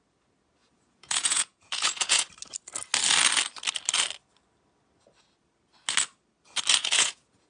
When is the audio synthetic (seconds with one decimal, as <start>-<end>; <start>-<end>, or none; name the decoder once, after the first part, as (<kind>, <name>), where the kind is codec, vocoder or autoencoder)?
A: 0.6-2.3 (vocoder, Vocos); 6.8-7.5